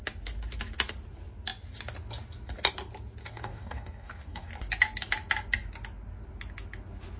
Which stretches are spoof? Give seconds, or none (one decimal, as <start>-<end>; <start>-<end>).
3.2-4.5

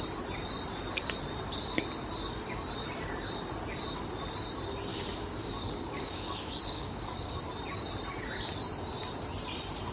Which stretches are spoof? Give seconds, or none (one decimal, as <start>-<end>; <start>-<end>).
4.9-7.4

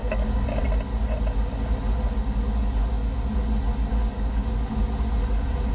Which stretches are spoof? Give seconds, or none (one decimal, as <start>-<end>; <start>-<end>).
0.0-0.6; 4.0-4.5

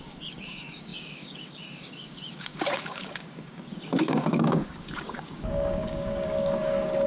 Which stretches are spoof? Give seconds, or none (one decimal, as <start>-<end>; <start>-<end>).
0.0-7.1